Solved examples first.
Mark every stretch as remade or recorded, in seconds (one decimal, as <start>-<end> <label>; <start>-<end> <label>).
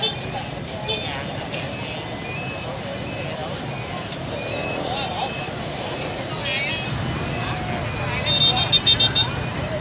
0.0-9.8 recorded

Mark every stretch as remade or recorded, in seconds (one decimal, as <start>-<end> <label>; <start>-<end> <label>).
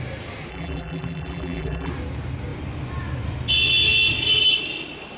0.0-0.5 recorded; 0.5-1.9 remade; 1.9-5.2 recorded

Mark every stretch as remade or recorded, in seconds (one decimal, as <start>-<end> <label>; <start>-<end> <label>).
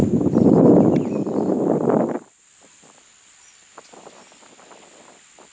0.0-3.3 remade; 3.3-5.5 recorded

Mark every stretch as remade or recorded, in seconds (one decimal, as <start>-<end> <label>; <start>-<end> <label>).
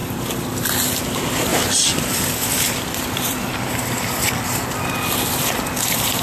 0.0-1.5 recorded; 1.5-4.1 remade; 4.1-6.2 recorded